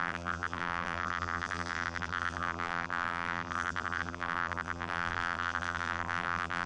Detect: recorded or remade remade